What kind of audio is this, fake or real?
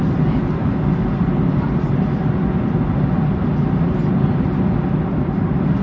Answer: real